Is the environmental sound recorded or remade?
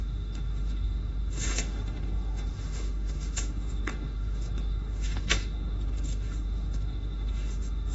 remade